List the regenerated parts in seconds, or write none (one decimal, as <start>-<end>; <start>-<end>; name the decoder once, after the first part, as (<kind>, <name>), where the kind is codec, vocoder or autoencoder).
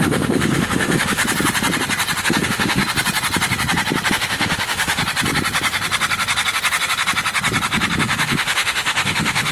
0.0-1.2 (autoencoder, DAC-VAE); 2.2-2.8; 4.1-5.0; 8.0-9.5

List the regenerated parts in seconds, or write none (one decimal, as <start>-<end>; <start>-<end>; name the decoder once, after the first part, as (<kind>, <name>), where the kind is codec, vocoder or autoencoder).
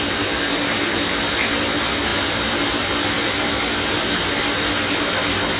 none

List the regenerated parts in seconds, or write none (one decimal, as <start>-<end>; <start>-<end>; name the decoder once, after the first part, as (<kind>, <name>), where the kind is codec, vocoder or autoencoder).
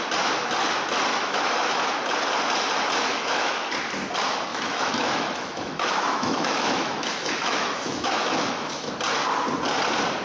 1.1-1.9 (autoencoder, DAC-VAE); 3.1-3.7; 4.5-8.9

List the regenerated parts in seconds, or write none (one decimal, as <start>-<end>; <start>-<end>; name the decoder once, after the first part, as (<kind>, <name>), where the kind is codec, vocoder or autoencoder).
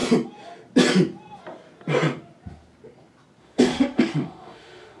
3.4-5.0 (autoencoder, DAC-VAE)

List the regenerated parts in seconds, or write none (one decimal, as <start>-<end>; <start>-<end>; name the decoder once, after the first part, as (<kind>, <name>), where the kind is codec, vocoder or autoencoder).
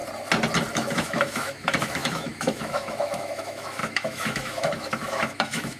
0.7-5.8 (autoencoder, DAC-VAE)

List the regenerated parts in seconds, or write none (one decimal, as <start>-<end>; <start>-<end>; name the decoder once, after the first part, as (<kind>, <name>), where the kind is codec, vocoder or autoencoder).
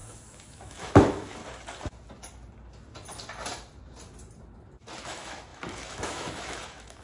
0.0-1.4 (autoencoder, DAC-VAE); 5.0-7.0